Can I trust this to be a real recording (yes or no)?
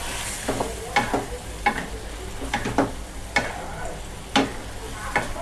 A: yes